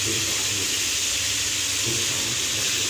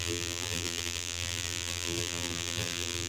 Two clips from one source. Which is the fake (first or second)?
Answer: second